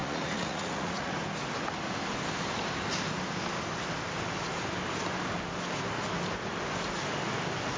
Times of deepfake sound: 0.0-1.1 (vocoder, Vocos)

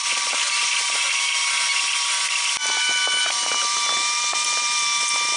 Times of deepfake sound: none

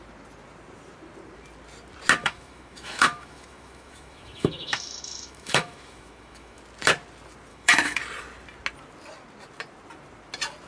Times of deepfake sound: 2.2-6.6 (autoencoder, DAC-VAE); 7.5-8.0

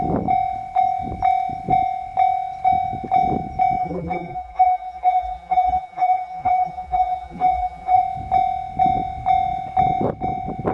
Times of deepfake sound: 3.8-8.0 (vocoder, BigVGAN v2)

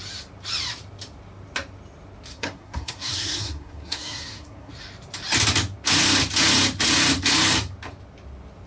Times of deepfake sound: 2.3-4.7 (codec, SNAC)

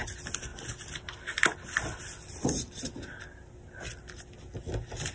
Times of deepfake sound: none

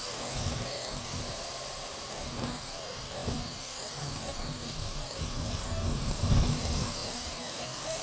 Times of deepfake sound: 0.0-1.2 (codec, DAC); 2.1-8.0